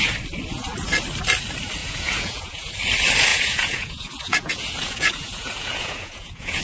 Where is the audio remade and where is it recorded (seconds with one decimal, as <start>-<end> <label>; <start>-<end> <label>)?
0.0-1.8 recorded; 1.8-2.7 remade; 2.7-3.3 recorded; 3.3-6.6 remade